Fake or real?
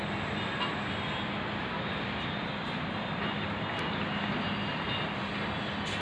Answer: real